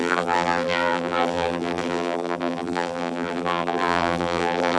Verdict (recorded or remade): remade